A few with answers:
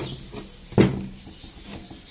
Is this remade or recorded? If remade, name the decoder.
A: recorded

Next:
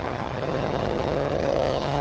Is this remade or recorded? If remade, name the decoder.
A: remade, vocoder, HiFi-GAN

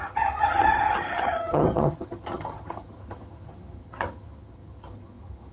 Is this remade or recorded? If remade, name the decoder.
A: remade, vocoder, HiFi-GAN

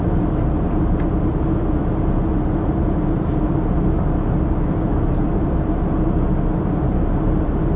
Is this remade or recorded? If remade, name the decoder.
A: recorded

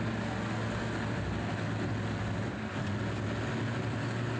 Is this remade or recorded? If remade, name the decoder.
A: recorded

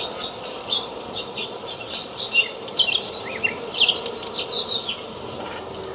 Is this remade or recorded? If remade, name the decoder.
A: recorded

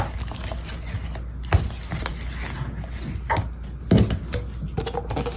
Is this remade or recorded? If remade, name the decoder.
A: recorded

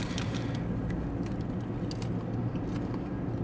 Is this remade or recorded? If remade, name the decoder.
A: recorded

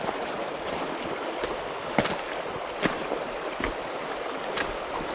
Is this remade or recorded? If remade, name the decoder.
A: recorded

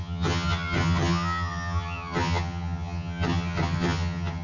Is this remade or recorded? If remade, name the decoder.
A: remade, vocoder, HiFi-GAN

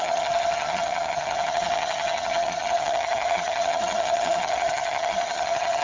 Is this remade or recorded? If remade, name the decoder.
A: remade, vocoder, HiFi-GAN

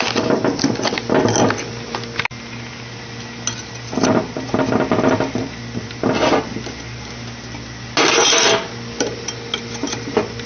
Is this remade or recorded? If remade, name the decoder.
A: recorded